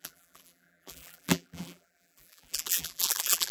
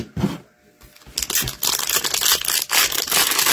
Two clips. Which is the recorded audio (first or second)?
second